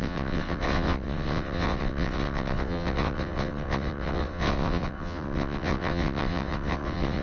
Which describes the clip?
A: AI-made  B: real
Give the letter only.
A